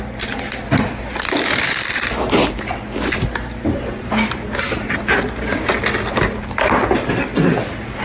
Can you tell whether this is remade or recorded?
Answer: recorded